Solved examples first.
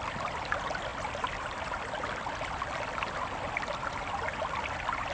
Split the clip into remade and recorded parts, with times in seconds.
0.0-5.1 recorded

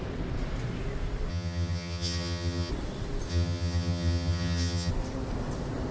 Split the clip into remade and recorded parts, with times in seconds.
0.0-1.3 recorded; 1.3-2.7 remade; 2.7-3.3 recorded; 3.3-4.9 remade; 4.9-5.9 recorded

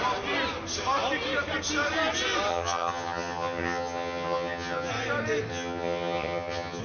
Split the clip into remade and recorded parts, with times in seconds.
0.0-2.5 recorded; 2.5-4.9 remade; 4.9-5.5 recorded; 5.5-6.8 remade